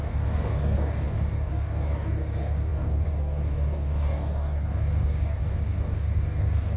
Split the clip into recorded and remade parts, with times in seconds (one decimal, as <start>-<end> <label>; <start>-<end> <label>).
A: 0.0-6.8 remade

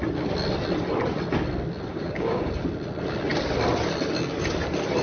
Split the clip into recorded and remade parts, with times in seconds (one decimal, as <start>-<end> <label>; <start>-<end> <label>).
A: 0.0-1.9 recorded; 1.9-2.5 remade; 2.5-5.0 recorded

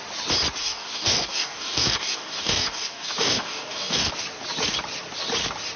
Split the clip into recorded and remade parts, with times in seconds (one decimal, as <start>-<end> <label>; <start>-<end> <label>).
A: 0.0-0.6 recorded; 0.6-4.1 remade; 4.1-5.8 recorded

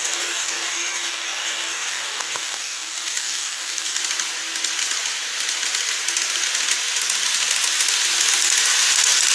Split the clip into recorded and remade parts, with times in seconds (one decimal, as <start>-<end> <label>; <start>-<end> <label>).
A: 0.0-4.0 remade; 4.0-9.3 recorded

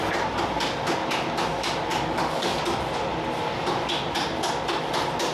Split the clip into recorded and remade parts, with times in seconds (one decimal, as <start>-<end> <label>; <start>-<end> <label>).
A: 0.0-1.9 recorded; 1.9-2.6 remade; 2.6-5.3 recorded